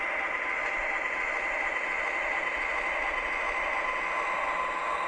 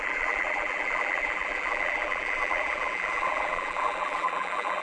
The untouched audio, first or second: first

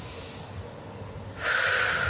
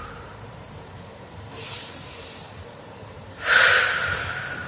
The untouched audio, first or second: first